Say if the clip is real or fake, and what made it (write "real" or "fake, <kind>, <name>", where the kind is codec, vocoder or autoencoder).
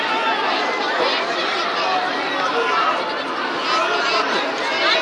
fake, vocoder, BigVGAN v2